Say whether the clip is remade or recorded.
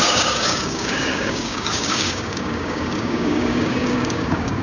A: remade